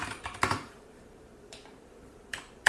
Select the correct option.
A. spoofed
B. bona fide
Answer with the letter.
A